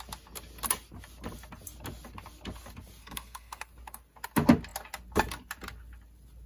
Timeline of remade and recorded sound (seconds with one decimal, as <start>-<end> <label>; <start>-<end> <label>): 0.0-3.0 recorded; 3.0-3.7 remade; 3.7-6.5 recorded